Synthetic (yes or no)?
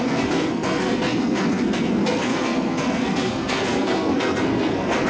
yes